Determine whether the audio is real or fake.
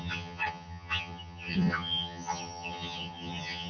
fake